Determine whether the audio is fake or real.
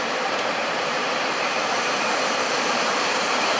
fake